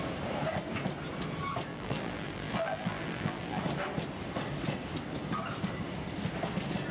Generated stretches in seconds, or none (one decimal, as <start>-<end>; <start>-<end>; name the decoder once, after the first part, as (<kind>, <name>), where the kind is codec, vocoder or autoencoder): 1.7-3.6 (vocoder, BigVGAN v2)